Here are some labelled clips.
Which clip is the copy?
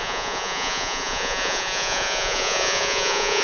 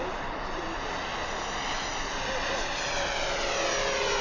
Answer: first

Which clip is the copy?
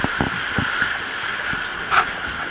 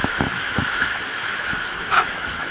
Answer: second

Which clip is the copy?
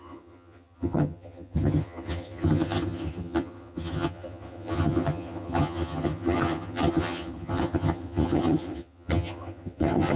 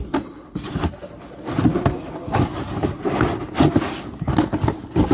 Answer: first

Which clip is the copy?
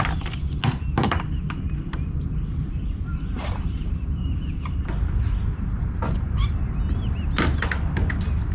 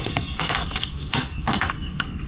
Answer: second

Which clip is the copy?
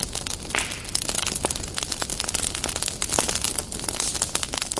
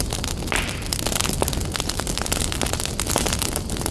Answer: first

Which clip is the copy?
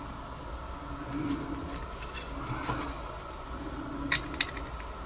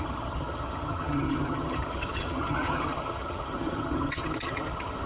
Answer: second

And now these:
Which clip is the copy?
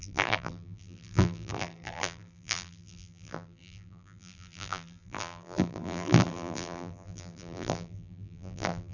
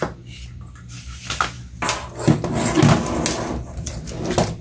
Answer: first